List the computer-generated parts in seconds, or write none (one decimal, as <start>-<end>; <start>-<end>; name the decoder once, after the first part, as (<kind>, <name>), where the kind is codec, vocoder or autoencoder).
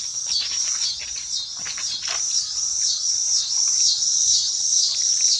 1.5-4.7 (vocoder, BigVGAN v2)